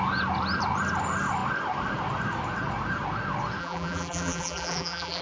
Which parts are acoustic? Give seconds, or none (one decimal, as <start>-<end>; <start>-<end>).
0.0-3.6